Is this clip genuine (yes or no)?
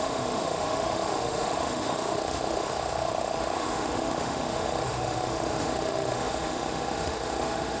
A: no